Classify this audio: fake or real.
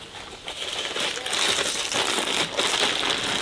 real